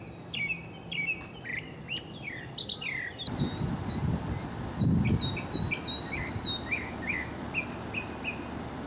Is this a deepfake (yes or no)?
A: no